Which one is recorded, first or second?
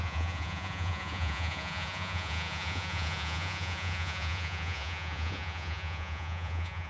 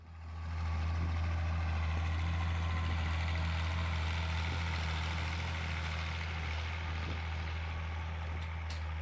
second